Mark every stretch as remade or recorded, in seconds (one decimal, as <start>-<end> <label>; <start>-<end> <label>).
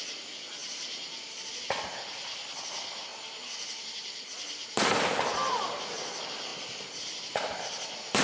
0.0-8.2 recorded